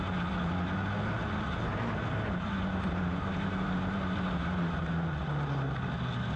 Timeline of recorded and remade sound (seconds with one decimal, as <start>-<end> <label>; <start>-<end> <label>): 0.0-1.7 recorded; 1.7-4.3 remade; 4.3-6.4 recorded